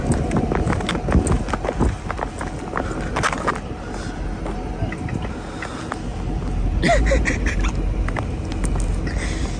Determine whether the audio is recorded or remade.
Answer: recorded